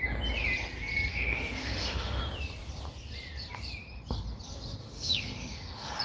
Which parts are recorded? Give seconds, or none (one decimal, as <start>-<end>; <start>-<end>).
0.0-1.1; 2.2-4.8

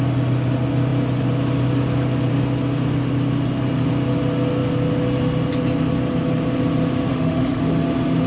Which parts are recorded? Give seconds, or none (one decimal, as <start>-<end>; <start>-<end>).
0.0-7.1; 7.6-8.3

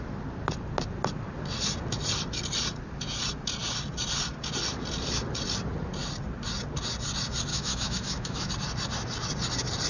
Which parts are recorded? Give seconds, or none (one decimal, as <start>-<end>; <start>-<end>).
0.0-7.5; 8.5-9.9